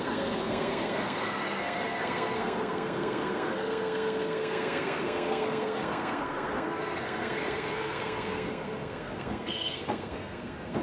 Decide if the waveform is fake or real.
fake